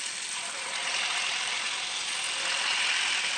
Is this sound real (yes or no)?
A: yes